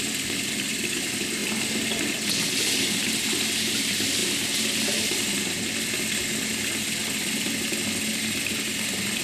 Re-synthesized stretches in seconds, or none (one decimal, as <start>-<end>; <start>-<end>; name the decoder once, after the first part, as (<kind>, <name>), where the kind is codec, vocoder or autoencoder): none